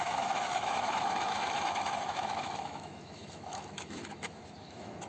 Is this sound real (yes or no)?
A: no